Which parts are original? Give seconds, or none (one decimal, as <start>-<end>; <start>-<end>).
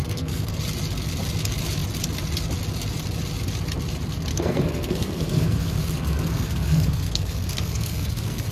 0.6-4.3